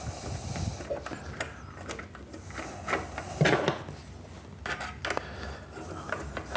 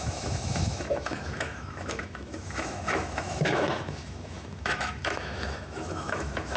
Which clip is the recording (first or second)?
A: first